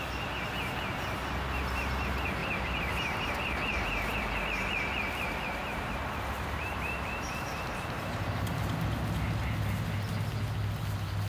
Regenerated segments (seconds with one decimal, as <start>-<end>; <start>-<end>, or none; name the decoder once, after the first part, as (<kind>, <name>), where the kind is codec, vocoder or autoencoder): 2.4-4.2 (vocoder, BigVGAN v2); 5.6-8.5